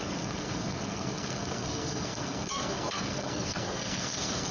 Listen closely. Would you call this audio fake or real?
fake